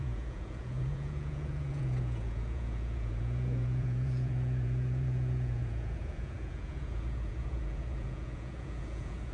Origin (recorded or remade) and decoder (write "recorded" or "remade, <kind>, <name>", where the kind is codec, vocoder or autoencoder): remade, vocoder, Vocos